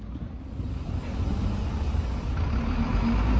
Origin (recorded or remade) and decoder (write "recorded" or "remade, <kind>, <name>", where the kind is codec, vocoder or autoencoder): recorded